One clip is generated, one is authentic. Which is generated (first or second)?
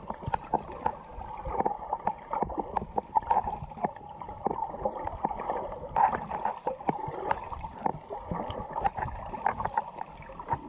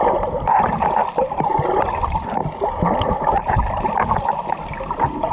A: first